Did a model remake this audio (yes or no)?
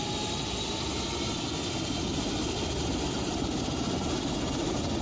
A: no